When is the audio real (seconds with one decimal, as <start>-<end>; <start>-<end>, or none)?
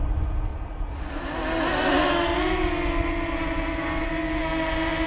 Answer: 0.0-5.1